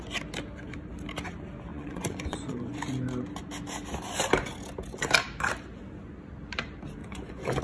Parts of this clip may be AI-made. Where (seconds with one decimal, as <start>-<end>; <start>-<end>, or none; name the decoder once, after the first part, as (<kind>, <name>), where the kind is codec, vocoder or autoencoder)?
1.7-2.8 (vocoder, Vocos); 7.0-7.6